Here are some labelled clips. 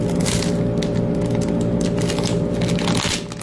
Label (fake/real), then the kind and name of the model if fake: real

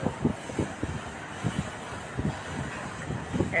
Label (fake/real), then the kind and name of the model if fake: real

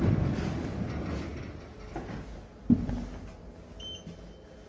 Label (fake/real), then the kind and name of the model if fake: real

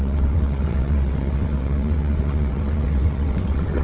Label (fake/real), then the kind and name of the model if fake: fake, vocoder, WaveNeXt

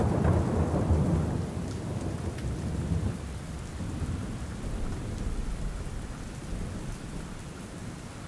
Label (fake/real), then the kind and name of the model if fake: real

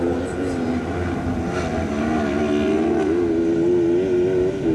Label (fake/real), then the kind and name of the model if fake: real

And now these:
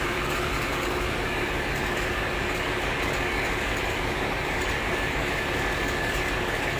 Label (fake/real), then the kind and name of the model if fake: fake, codec, DAC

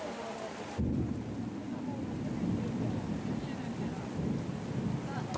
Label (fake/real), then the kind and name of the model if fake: real